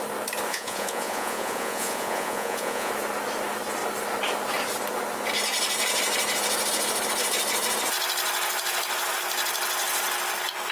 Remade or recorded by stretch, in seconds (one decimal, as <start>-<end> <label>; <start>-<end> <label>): 0.0-0.5 recorded; 0.5-2.9 remade; 2.9-10.7 recorded